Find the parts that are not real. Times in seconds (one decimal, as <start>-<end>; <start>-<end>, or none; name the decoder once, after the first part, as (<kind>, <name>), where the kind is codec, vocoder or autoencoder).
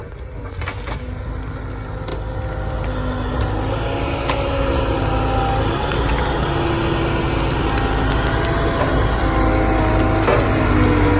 none